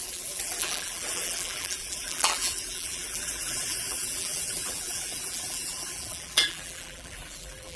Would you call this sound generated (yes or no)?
yes